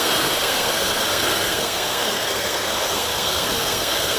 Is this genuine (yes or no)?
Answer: no